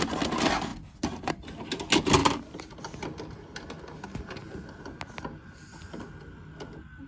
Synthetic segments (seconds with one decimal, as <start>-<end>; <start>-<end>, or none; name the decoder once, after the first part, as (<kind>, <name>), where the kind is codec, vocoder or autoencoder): none